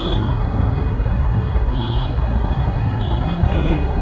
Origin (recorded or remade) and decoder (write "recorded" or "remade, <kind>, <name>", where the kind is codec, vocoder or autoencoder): remade, codec, SNAC